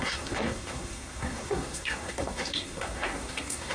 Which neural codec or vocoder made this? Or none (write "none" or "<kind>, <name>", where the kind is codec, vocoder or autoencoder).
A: codec, SNAC